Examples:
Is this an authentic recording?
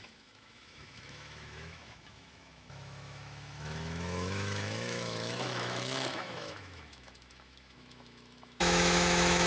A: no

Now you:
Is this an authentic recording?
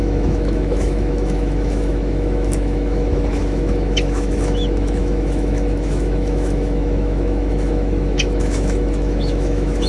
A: no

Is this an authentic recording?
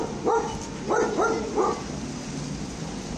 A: yes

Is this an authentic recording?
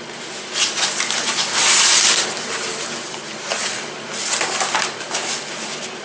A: yes